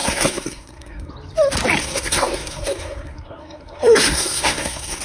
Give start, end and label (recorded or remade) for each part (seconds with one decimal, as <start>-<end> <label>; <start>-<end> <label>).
0.0-1.1 remade; 1.1-1.8 recorded; 1.8-5.0 remade